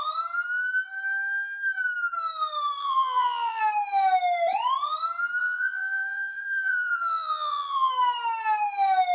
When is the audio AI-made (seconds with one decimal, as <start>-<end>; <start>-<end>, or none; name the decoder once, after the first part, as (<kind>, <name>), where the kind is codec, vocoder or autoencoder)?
2.8-3.6 (vocoder, BigVGAN v2); 5.4-7.9